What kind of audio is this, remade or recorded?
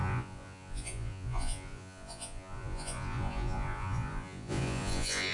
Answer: remade